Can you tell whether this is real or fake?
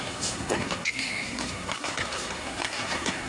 fake